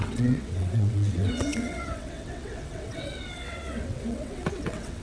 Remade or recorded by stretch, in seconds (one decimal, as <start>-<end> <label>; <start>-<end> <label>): 0.0-5.0 remade